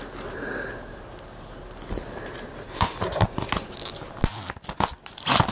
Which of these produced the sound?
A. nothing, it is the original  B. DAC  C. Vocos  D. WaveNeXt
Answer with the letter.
A